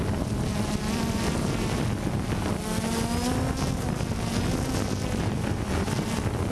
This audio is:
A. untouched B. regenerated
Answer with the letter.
A